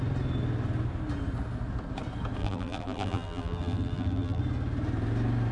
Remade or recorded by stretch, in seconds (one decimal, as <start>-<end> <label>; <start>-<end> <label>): 0.0-2.4 recorded; 2.4-4.4 remade; 4.4-5.5 recorded